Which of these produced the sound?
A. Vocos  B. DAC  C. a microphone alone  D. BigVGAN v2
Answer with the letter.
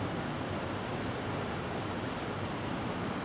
C